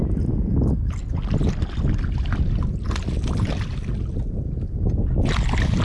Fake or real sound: real